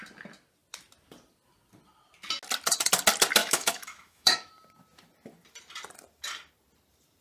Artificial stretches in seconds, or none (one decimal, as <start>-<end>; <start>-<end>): 3.4-4.5